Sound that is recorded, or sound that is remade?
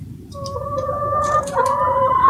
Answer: remade